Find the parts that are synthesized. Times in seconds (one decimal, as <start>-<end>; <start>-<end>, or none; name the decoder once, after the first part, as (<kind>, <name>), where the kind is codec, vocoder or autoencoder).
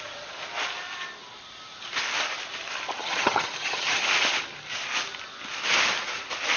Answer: 3.0-4.0 (vocoder, HiFi-GAN)